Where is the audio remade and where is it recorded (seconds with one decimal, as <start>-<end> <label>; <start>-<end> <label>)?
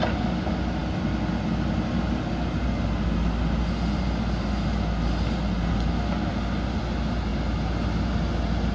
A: 0.0-8.7 recorded